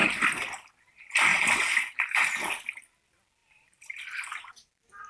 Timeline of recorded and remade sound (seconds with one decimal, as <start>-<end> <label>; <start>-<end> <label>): 0.0-1.3 recorded; 1.3-2.6 remade; 2.6-3.4 recorded; 3.4-4.5 remade; 4.5-5.1 recorded